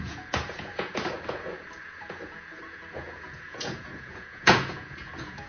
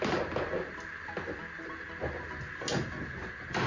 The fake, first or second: first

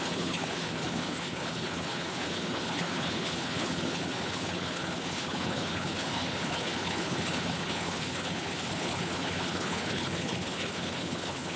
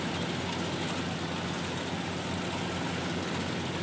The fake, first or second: first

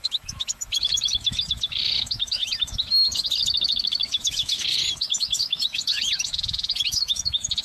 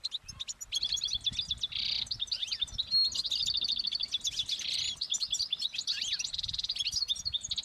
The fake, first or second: first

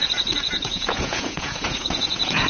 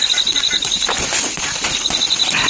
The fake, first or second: first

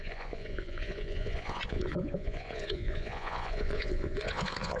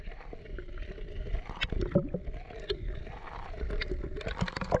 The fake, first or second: first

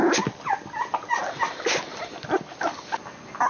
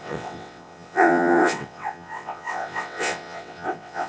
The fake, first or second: second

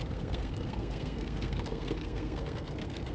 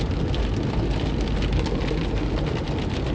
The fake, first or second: first